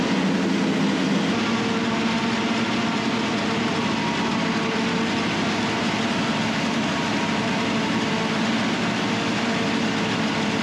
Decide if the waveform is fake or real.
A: real